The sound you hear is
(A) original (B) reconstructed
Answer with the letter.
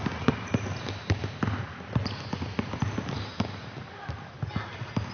A